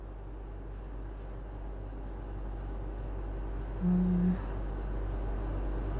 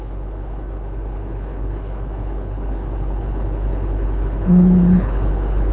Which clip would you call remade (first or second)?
second